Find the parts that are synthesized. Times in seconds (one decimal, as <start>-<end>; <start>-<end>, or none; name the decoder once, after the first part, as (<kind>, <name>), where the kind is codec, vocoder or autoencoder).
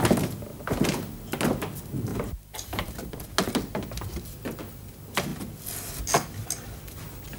0.5-1.1 (vocoder, BigVGAN v2); 2.1-3.2